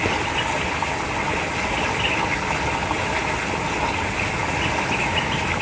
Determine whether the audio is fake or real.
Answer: real